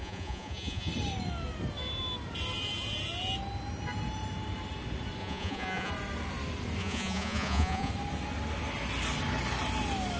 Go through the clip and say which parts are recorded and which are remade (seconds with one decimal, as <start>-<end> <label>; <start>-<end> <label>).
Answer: 0.0-0.9 remade; 0.9-5.2 recorded; 5.2-5.9 remade; 5.9-6.8 recorded; 6.8-7.9 remade; 7.9-10.2 recorded